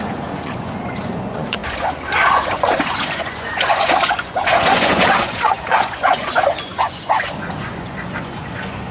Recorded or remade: remade